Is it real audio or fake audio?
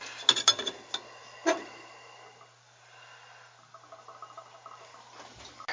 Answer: real